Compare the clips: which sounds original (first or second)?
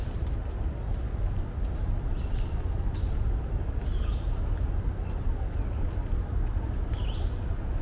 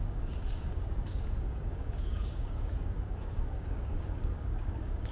first